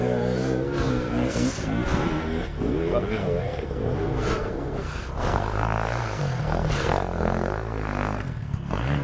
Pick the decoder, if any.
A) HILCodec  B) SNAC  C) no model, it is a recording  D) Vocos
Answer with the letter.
B